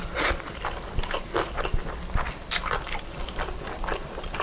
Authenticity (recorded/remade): recorded